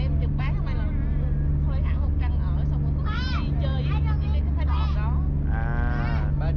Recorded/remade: recorded